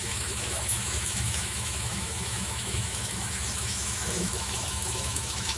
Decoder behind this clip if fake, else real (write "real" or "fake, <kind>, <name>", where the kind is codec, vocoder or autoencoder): fake, autoencoder, DAC-VAE